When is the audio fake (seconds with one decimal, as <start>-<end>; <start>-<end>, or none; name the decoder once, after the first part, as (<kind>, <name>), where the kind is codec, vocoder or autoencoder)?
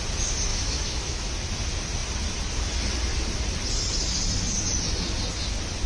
0.5-1.3 (autoencoder, DAC-VAE)